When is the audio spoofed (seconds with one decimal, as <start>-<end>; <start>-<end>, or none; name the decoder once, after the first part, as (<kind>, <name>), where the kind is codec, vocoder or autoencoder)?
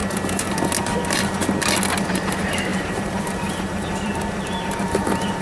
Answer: 2.1-5.4 (vocoder, BigVGAN v2)